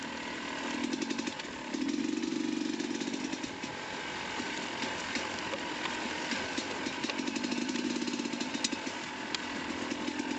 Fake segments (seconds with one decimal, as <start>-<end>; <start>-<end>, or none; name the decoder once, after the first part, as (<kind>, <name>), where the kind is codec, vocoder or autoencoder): none